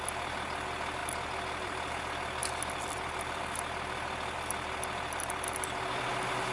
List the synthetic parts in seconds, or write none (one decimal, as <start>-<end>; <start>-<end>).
1.0-1.9; 2.4-3.4